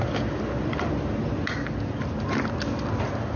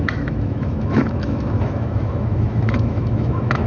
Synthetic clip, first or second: second